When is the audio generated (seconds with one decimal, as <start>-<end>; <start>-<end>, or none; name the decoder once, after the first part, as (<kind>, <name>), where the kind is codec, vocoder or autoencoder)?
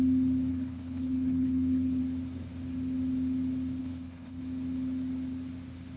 0.5-2.0 (codec, HILCodec); 3.8-4.4